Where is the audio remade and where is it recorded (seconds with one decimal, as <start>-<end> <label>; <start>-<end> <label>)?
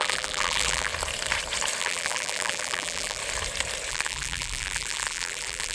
0.0-0.9 remade; 0.9-1.8 recorded; 1.8-3.2 remade; 3.2-3.9 recorded; 3.9-5.7 remade